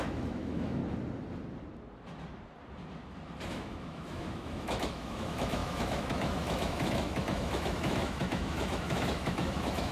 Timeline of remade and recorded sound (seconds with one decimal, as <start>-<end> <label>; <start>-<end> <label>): 0.0-0.8 remade; 0.8-3.5 recorded; 3.5-9.9 remade